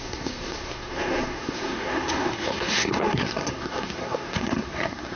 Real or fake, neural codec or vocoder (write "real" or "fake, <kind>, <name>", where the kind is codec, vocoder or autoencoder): fake, codec, SNAC